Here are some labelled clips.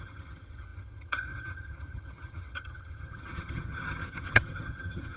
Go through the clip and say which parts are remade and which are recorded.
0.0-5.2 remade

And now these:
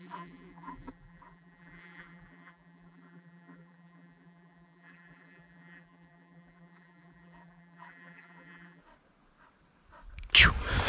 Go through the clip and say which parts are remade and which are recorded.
0.0-8.8 remade; 8.8-10.9 recorded

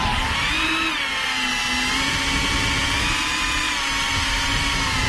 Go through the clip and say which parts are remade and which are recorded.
0.0-5.1 recorded

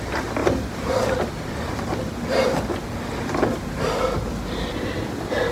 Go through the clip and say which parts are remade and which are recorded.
0.0-5.5 recorded

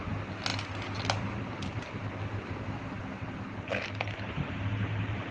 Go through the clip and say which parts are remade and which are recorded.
0.0-5.3 recorded